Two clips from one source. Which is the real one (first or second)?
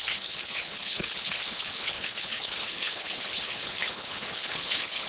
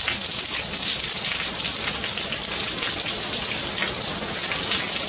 second